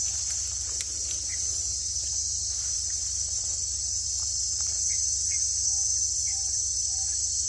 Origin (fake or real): fake